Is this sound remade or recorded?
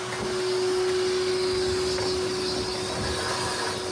recorded